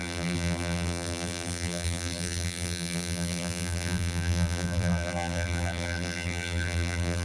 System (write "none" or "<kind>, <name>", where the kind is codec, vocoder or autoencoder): vocoder, BigVGAN v2